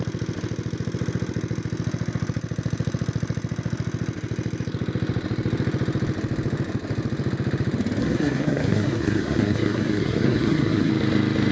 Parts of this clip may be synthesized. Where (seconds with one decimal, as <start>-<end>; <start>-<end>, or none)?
8.0-10.9